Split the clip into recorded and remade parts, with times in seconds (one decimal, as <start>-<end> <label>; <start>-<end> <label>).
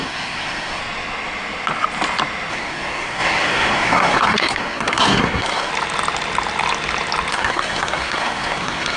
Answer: 0.0-0.8 remade; 0.8-2.5 recorded; 2.5-5.7 remade; 5.7-7.3 recorded; 7.3-9.0 remade